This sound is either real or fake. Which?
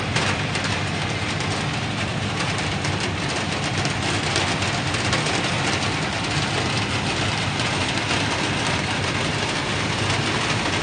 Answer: real